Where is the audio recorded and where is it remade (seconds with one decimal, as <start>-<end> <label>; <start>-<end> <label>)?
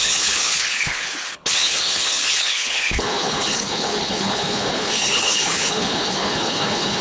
0.0-7.0 remade